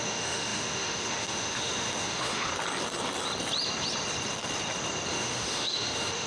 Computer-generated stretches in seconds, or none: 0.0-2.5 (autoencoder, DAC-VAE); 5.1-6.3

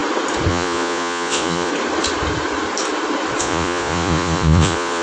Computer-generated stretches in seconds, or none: 0.5-1.7 (vocoder, Vocos); 3.4-5.0

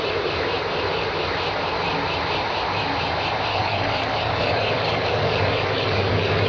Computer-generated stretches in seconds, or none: 3.5-6.5 (codec, DAC)

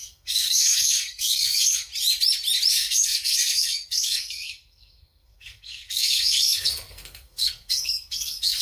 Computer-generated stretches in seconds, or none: 0.0-1.9 (codec, SNAC); 2.7-8.6